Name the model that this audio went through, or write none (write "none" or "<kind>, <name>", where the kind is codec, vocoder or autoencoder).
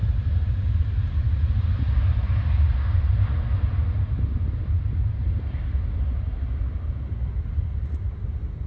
none